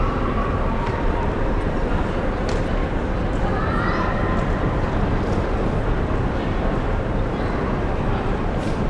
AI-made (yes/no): yes